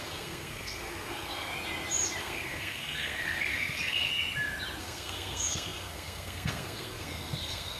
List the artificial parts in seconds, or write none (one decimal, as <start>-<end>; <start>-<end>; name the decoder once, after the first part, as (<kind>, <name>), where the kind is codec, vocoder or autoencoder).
0.0-1.5 (codec, SNAC); 2.2-4.1; 4.8-7.8